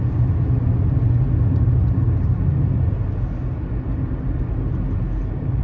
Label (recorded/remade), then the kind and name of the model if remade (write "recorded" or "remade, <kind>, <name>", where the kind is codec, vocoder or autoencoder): recorded